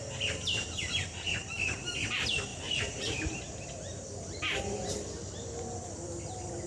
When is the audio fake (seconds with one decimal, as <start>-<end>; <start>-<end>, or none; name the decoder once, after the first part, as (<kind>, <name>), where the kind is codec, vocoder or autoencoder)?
0.0-6.7 (vocoder, BigVGAN v2)